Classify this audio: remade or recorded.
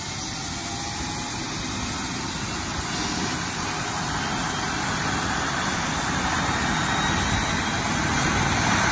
recorded